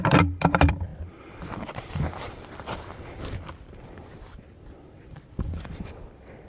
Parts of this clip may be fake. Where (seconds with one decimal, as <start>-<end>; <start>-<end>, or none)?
0.0-6.5